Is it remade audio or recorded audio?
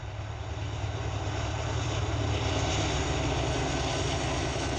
recorded